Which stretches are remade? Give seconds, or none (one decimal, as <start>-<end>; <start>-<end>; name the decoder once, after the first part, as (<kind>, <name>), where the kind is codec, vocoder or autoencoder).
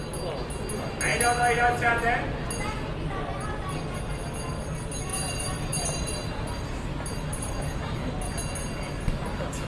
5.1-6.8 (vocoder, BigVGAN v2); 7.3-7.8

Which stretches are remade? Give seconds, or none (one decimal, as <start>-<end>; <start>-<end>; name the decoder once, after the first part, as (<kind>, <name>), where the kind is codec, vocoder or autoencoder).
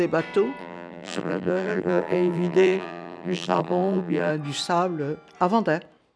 0.6-4.3 (vocoder, BigVGAN v2)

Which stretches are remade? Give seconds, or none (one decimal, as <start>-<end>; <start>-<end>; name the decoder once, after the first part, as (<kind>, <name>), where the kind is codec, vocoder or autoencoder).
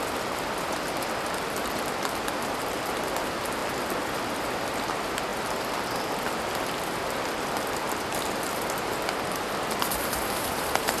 none